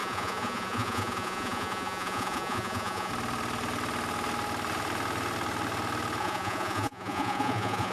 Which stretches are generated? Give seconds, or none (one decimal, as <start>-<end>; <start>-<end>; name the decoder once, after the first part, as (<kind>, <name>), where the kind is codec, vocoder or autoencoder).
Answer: 0.0-3.1 (vocoder, Vocos); 6.2-7.9